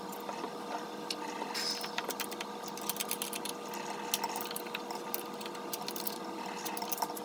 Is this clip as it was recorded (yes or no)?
yes